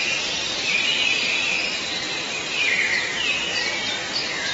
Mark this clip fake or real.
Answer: real